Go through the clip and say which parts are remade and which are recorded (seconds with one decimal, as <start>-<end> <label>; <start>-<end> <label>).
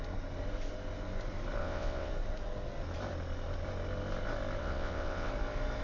0.0-1.6 recorded; 1.6-2.1 remade; 2.1-4.6 recorded; 4.6-5.3 remade; 5.3-5.8 recorded